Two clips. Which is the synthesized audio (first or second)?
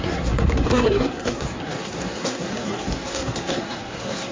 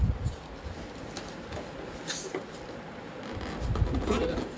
first